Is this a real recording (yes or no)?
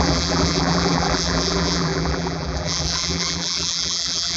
no